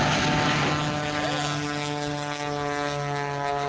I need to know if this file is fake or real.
real